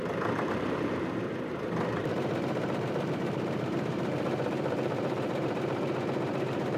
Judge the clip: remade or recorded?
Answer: remade